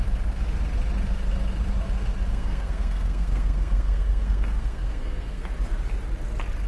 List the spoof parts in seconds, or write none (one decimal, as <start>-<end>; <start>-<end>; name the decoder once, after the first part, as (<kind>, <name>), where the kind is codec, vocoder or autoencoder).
2.3-5.5 (codec, SNAC)